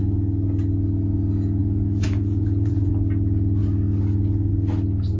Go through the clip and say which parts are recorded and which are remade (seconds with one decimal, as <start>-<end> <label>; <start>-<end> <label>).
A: 0.0-1.6 recorded; 1.6-2.9 remade; 2.9-5.2 recorded